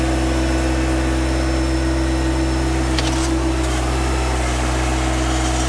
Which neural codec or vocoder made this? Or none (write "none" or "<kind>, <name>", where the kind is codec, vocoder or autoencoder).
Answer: none